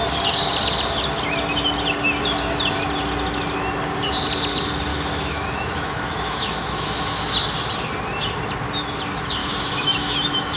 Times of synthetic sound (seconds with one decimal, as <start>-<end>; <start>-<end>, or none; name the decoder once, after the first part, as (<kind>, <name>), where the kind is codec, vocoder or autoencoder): 4.9-7.3 (autoencoder, DAC-VAE); 9.4-10.6